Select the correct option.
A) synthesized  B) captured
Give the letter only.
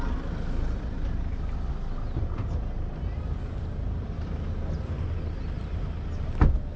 B